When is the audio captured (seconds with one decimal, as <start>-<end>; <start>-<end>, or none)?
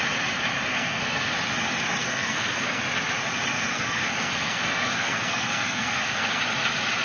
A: 0.0-0.7; 1.3-2.0; 2.8-3.7; 6.4-7.0